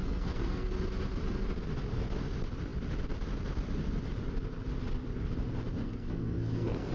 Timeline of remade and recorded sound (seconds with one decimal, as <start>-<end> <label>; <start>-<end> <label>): 0.0-0.7 remade; 0.7-5.8 recorded; 5.8-6.9 remade